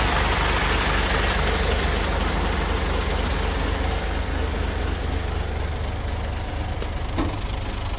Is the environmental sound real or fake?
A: real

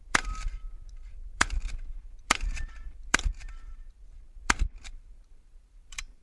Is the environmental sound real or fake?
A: fake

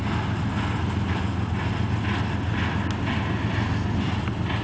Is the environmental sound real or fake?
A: real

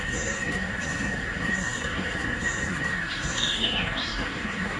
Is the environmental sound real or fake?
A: fake